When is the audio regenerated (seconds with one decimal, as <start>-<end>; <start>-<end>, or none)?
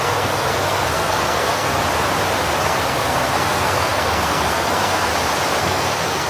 0.0-1.8; 2.6-5.1; 5.6-6.3